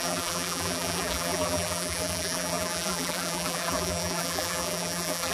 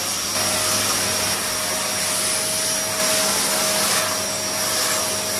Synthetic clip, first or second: first